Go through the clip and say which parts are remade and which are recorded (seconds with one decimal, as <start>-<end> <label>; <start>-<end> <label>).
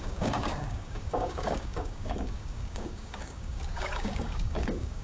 0.0-5.0 remade